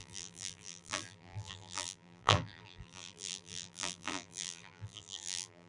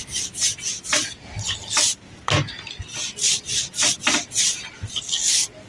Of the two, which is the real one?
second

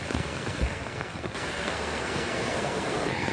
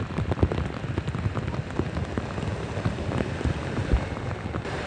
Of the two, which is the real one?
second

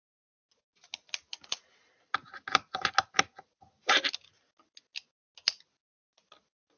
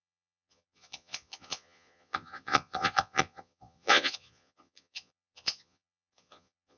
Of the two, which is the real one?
first